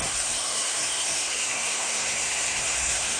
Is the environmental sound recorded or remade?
remade